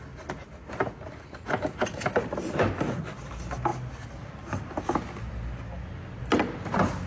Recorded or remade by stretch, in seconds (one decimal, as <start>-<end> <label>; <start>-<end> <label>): 0.0-7.1 recorded